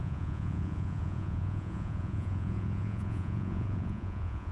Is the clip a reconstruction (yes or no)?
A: yes